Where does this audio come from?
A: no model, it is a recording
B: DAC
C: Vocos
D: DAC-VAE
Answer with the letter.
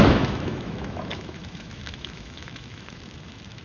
D